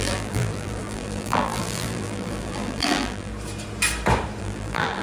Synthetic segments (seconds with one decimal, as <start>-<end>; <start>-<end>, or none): 0.0-3.3; 4.4-5.0